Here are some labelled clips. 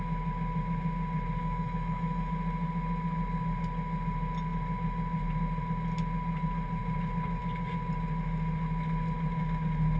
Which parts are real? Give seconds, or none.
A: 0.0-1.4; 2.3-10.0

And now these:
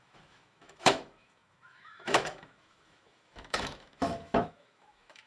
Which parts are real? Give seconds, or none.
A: none